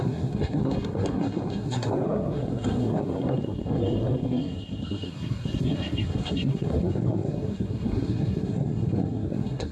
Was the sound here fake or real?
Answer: fake